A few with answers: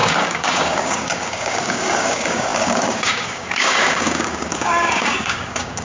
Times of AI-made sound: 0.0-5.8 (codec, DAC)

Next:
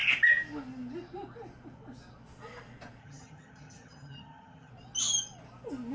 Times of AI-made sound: 3.0-4.7 (vocoder, HiFi-GAN)